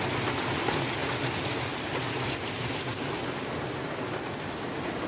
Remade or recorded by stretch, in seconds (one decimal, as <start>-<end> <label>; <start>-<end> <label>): 0.0-5.1 recorded